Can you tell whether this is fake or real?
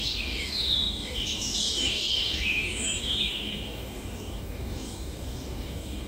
fake